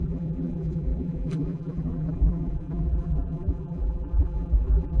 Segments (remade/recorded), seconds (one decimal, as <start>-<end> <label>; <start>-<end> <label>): 0.0-5.0 remade